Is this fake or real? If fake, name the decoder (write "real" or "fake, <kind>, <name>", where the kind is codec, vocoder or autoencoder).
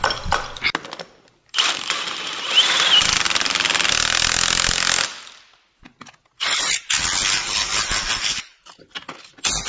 real